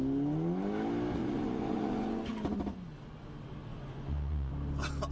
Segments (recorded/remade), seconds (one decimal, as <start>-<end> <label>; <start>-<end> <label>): 0.0-1.2 recorded; 1.2-2.3 remade; 2.3-3.7 recorded; 3.7-4.5 remade; 4.5-5.1 recorded